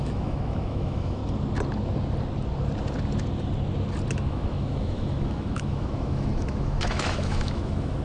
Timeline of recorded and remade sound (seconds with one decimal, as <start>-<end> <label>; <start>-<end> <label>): 0.0-1.2 remade; 1.2-4.1 recorded; 4.1-8.0 remade